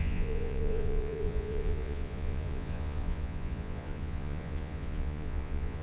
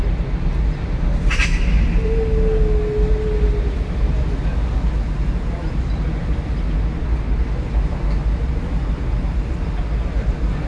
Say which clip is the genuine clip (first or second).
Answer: second